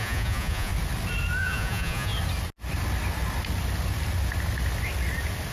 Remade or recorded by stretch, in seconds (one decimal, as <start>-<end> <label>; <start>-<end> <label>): 0.0-0.7 remade; 0.7-1.4 recorded; 1.4-2.1 remade; 2.1-5.5 recorded